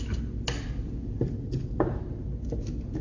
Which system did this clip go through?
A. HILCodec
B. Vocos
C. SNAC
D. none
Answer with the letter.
D